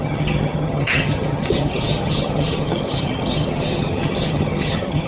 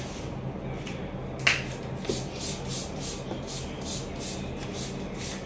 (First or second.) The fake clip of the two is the first